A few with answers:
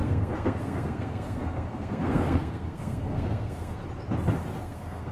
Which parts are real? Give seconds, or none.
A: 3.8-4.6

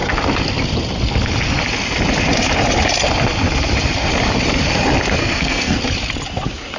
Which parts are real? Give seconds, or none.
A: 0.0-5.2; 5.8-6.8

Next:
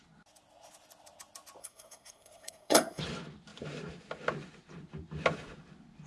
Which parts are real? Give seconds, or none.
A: 0.0-1.6; 3.0-6.1

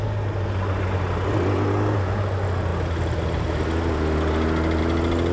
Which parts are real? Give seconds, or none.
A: 0.0-5.3